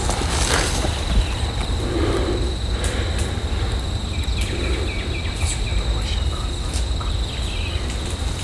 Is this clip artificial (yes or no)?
no